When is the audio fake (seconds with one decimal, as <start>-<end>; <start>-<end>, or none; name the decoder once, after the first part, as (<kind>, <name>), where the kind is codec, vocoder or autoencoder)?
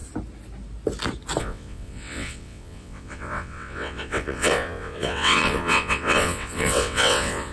1.4-7.5 (vocoder, WaveNeXt)